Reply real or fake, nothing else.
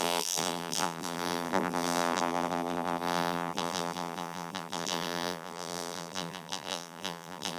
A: fake